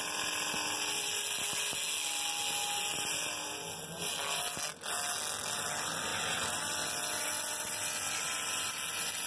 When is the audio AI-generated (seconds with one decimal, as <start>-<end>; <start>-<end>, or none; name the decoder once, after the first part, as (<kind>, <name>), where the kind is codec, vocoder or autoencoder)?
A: none